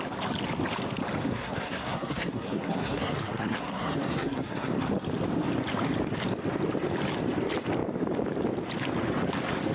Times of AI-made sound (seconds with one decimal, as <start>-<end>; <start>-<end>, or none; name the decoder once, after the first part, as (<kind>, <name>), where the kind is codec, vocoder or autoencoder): 1.3-4.7 (codec, SNAC)